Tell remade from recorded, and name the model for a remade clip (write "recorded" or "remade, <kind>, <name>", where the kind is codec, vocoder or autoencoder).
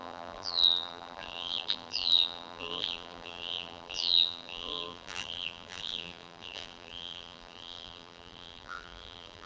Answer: remade, vocoder, BigVGAN v2